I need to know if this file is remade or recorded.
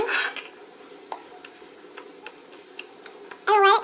recorded